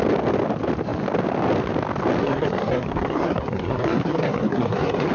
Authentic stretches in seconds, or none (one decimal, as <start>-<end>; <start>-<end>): 0.0-2.2

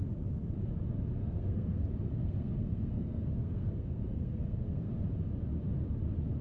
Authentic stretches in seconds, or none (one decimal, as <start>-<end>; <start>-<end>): 0.0-1.2; 1.8-2.2; 4.9-6.4